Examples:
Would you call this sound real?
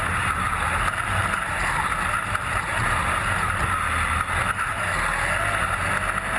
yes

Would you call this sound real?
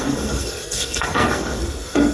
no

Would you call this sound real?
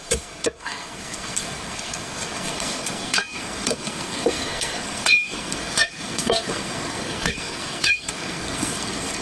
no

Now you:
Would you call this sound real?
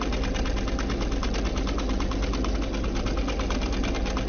yes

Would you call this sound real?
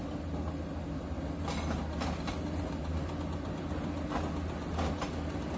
yes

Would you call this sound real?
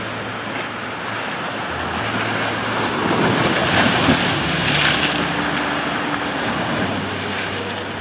yes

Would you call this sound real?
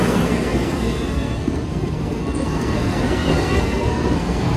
no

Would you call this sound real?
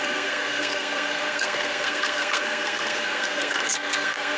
no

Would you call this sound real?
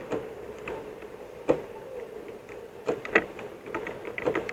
yes